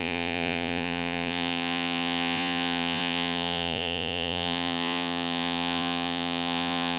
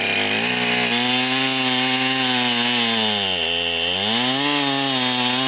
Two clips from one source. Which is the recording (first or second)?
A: second